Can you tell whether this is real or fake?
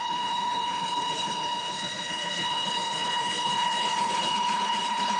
fake